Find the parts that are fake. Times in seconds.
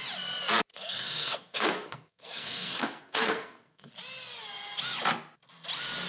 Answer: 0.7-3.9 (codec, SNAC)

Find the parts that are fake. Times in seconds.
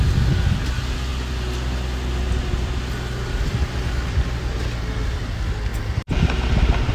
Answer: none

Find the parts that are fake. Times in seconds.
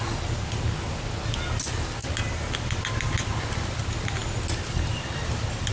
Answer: none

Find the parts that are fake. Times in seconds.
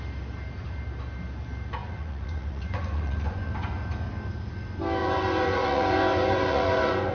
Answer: 1.8-3.5 (vocoder, Vocos); 5.0-7.1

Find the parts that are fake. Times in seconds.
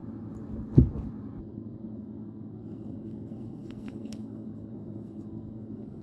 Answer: 1.4-6.0 (codec, SNAC)